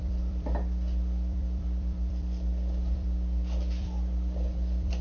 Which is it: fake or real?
fake